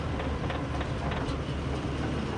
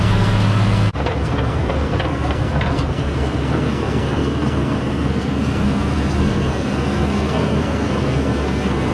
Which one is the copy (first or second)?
second